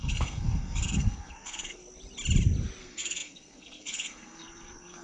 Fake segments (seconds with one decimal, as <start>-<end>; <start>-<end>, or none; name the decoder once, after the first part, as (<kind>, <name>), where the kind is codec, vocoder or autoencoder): 0.0-1.8 (codec, SNAC); 2.8-5.0